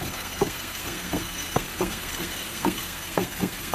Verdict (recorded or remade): remade